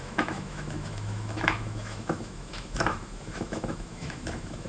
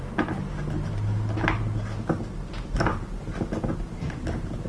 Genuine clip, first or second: second